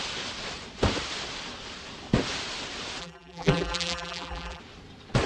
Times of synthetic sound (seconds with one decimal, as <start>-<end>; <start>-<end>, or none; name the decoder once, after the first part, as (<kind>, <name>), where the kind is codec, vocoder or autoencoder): 3.0-4.6 (vocoder, BigVGAN v2)